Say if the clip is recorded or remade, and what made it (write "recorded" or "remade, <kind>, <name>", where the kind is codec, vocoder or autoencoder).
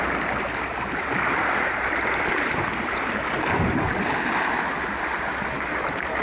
recorded